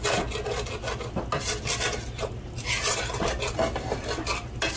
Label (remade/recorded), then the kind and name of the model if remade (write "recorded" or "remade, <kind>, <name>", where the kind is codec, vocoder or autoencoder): recorded